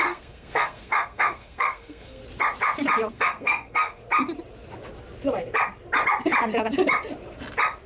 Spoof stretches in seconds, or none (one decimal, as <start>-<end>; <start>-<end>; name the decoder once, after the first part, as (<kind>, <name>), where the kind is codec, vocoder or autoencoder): 0.0-2.2 (codec, SNAC); 3.1-4.0